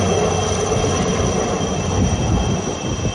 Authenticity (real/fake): real